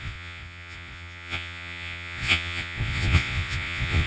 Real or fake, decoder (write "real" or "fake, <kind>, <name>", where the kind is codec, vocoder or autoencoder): fake, vocoder, Vocos